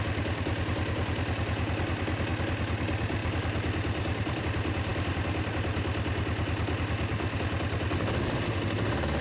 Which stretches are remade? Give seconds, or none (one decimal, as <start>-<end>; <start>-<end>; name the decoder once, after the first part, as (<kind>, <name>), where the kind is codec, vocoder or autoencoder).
3.2-4.4 (vocoder, BigVGAN v2); 4.9-5.5